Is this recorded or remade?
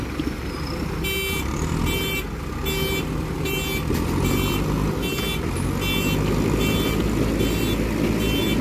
recorded